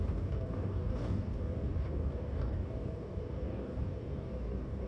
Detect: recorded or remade remade